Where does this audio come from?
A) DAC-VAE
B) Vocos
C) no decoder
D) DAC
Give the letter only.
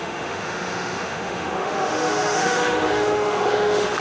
A